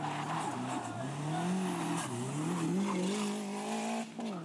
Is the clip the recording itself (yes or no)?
yes